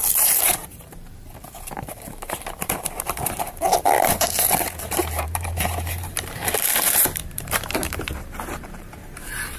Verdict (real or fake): fake